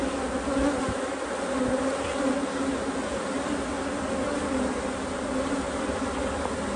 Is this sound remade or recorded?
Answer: recorded